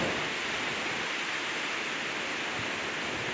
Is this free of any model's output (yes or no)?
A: yes